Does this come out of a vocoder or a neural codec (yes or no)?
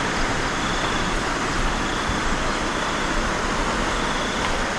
no